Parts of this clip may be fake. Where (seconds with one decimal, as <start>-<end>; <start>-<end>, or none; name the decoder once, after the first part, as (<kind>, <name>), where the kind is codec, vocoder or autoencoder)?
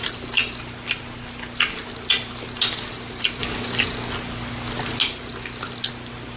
none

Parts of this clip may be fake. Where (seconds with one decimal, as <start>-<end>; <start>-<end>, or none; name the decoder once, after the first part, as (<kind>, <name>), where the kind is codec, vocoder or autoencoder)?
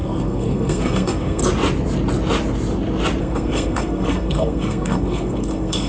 0.0-1.4 (codec, SNAC); 3.2-5.9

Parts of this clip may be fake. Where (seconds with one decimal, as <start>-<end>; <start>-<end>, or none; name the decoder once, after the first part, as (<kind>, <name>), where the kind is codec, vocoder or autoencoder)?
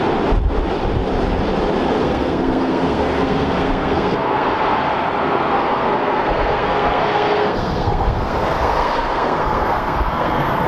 2.0-4.8 (codec, SNAC); 5.2-10.7